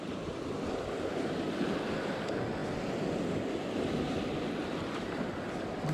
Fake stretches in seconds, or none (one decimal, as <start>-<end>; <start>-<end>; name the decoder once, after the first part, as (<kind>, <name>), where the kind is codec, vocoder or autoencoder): none